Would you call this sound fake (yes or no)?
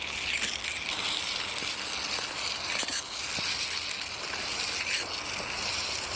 no